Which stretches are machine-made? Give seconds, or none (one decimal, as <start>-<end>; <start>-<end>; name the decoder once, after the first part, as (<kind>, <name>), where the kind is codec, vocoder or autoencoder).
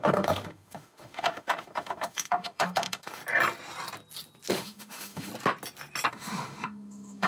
0.0-3.2 (autoencoder, DAC-VAE); 4.5-5.3; 6.1-7.3